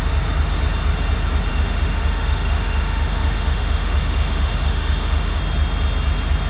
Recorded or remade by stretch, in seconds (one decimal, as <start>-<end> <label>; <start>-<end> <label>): 0.0-1.5 recorded; 1.5-5.4 remade; 5.4-6.5 recorded